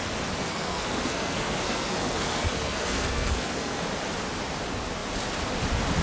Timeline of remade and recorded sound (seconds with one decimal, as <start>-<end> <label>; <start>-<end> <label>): 0.0-0.4 recorded; 0.4-3.8 remade; 3.8-6.0 recorded